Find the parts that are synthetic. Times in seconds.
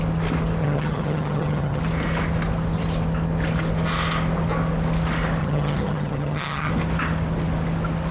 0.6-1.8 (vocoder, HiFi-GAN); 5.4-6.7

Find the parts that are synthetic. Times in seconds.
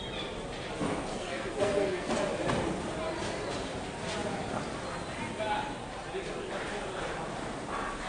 1.1-2.1 (codec, SNAC)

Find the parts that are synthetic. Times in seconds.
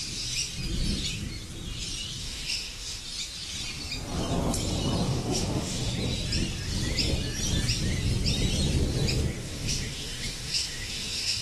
2.2-3.0 (autoencoder, DAC-VAE); 5.1-5.9; 9.4-11.4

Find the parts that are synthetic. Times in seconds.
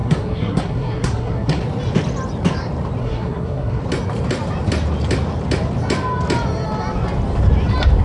0.0-1.6 (codec, SNAC); 3.0-3.8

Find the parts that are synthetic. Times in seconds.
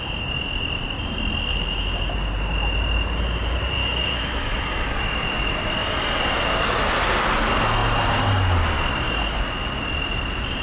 1.5-2.0 (autoencoder, DAC-VAE); 3.8-4.5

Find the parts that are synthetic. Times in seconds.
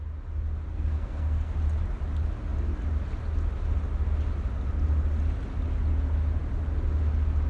0.7-1.5 (codec, SNAC)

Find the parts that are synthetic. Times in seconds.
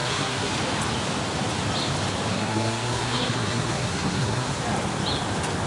0.0-0.5 (codec, SNAC); 2.3-4.6